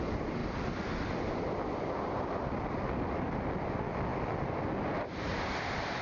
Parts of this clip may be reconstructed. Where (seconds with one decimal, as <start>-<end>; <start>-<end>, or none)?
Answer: 0.4-2.4; 4.1-4.6; 5.3-6.0